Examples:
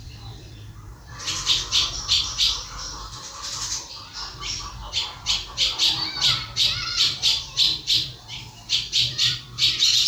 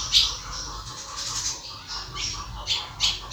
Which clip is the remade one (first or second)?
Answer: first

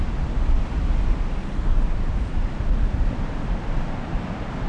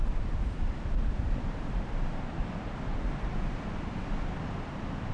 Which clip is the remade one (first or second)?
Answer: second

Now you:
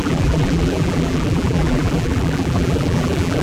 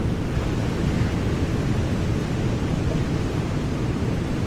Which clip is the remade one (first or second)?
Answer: first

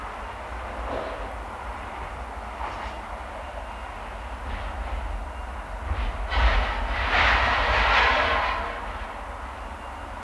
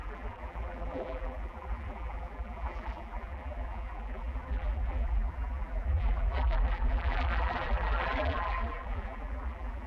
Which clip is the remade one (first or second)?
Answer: second